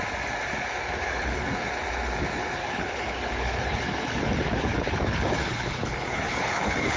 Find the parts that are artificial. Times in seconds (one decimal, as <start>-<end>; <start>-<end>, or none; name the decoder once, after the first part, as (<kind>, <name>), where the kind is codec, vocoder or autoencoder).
1.0-1.7 (codec, HILCodec); 2.6-7.0